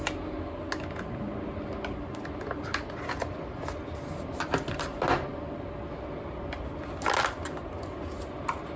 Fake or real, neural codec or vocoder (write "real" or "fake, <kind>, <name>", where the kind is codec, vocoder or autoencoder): real